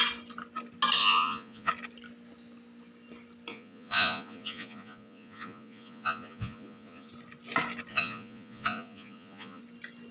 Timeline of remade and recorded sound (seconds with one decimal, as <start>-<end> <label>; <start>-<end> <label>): 0.0-1.0 recorded; 1.0-1.7 remade; 1.7-3.5 recorded; 3.5-7.1 remade; 7.1-7.9 recorded; 7.9-9.6 remade; 9.6-10.1 recorded